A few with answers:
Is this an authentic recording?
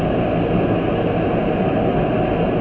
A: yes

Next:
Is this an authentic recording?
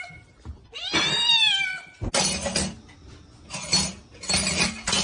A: yes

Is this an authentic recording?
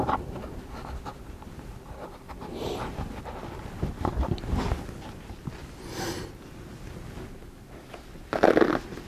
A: yes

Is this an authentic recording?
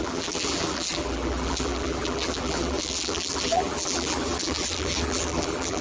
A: no